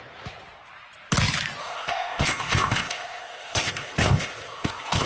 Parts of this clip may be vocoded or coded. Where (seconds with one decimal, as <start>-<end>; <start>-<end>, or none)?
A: 1.6-5.1